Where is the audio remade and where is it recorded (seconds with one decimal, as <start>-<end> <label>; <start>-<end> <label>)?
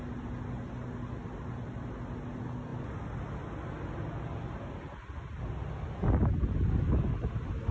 0.0-7.7 recorded